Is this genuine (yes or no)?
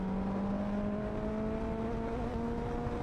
yes